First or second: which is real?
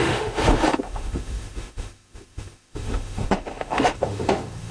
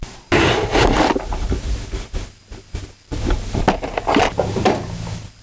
second